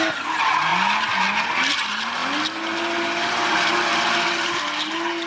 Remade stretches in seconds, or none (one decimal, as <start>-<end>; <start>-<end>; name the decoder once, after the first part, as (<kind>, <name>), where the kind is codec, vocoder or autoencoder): none